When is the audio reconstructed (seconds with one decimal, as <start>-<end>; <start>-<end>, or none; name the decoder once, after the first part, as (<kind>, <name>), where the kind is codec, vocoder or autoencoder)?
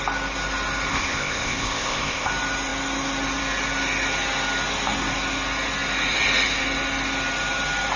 0.9-2.3 (codec, ZipCodec)